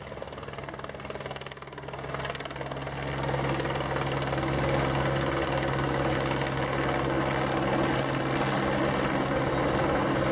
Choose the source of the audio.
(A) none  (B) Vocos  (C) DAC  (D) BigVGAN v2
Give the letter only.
A